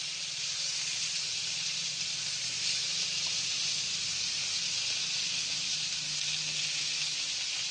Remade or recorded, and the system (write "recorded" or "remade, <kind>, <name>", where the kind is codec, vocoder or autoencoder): recorded